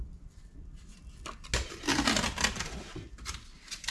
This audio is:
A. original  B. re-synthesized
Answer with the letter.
A